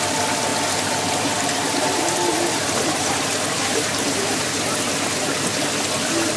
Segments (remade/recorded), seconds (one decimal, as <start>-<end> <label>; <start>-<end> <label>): 0.0-2.3 recorded; 2.3-5.3 remade; 5.3-6.4 recorded